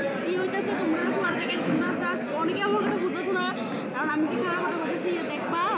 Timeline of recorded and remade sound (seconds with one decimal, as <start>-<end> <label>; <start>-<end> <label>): 0.0-1.0 recorded; 1.0-1.9 remade; 1.9-5.8 recorded